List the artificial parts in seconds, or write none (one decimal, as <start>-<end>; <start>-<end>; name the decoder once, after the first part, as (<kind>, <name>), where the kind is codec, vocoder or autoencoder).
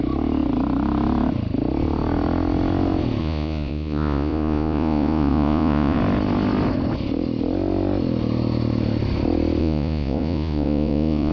3.2-6.0 (vocoder, Vocos); 9.6-11.3